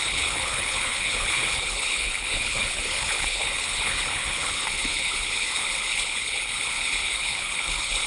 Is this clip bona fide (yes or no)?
no